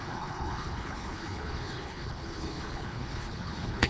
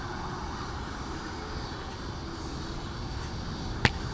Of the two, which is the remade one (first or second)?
first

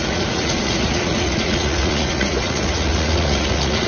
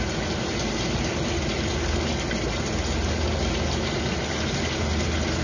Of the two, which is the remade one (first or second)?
first